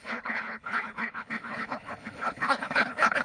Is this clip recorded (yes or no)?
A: no